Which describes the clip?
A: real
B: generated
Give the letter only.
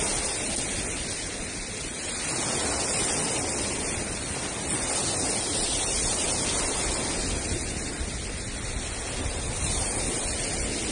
A